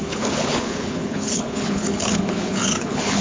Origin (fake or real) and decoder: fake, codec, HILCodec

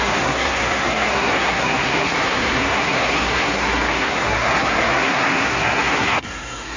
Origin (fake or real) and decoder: fake, codec, SNAC